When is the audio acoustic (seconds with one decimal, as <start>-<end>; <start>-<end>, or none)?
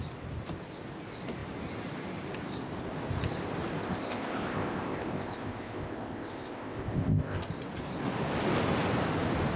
0.0-3.8; 7.5-9.6